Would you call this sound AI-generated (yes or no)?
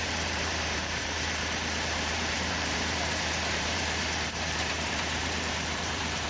yes